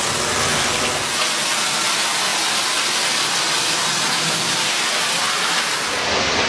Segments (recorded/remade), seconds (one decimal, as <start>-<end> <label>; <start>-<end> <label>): 0.0-6.5 recorded